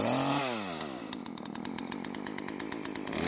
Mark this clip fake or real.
real